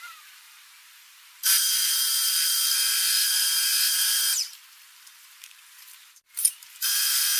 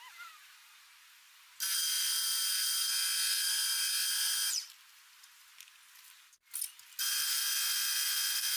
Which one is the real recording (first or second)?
second